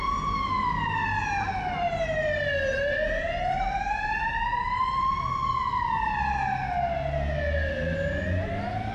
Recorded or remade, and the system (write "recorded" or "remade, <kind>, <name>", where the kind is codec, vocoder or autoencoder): recorded